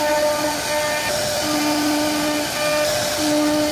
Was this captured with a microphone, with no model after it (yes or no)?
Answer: yes